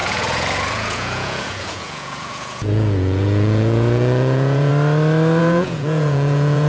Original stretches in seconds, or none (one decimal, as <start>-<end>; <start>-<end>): 4.7-5.4